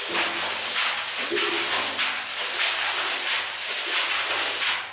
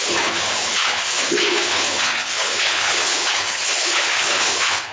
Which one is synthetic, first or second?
second